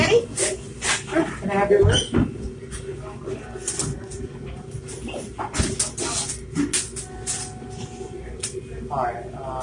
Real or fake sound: real